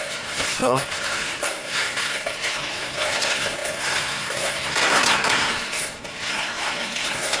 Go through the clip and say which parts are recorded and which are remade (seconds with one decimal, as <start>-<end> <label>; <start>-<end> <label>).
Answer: 0.0-7.4 remade